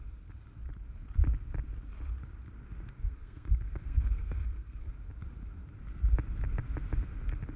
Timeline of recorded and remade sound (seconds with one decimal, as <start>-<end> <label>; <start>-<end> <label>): 0.0-3.0 recorded; 3.0-4.9 remade; 4.9-7.6 recorded

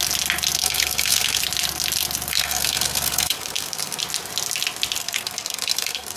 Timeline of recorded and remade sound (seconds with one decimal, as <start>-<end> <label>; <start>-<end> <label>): 0.0-0.6 recorded; 0.6-1.4 remade; 1.4-2.3 recorded; 2.3-4.0 remade; 4.0-5.0 recorded; 5.0-6.2 remade

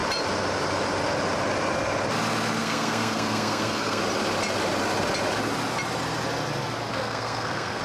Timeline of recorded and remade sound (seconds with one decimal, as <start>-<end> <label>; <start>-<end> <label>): 0.0-2.6 recorded; 2.6-4.0 remade; 4.0-6.9 recorded; 6.9-7.8 remade